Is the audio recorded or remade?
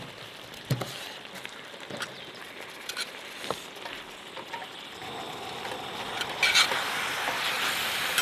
recorded